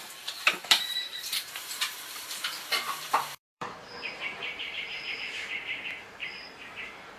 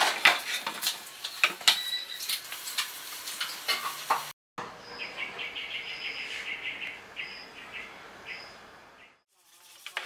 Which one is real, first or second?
second